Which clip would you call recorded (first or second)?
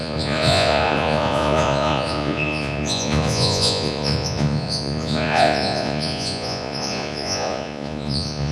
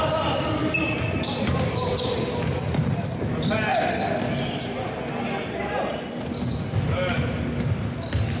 second